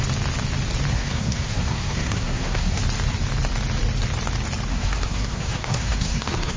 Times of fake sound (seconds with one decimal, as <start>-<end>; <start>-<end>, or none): 0.9-2.8; 4.7-6.6

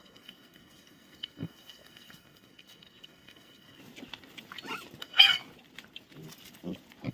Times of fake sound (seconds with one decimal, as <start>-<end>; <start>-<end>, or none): 0.0-3.8; 5.0-5.4

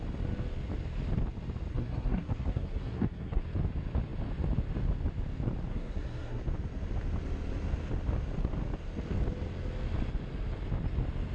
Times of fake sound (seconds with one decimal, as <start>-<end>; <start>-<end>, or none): 1.7-3.4; 5.7-6.4

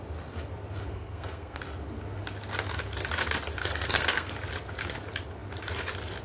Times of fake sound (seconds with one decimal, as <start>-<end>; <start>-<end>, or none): 0.9-1.6; 3.6-4.3

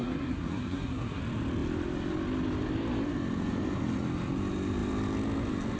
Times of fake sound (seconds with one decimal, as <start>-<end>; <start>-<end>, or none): 0.0-1.2

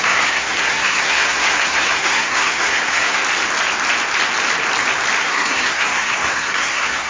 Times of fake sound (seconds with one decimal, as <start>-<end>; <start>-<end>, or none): 0.0-3.2; 5.2-7.1

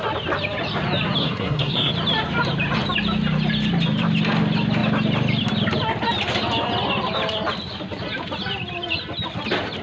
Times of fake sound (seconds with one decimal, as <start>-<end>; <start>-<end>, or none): 1.2-1.9

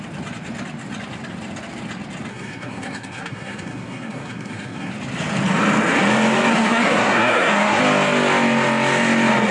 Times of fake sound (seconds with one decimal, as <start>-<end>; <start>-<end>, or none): 2.3-4.9; 6.5-7.8